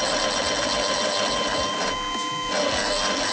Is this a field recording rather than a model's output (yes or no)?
yes